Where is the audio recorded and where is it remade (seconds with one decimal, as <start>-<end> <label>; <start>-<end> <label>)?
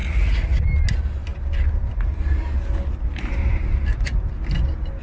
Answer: 0.0-0.6 remade; 0.6-5.0 recorded